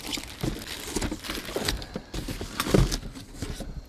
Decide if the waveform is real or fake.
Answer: real